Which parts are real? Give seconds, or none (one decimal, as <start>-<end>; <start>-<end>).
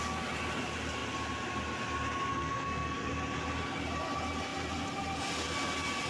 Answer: 0.0-2.3; 3.1-6.1